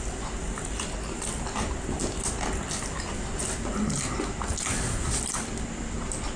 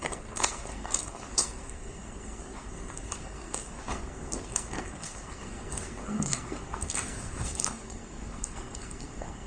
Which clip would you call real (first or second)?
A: first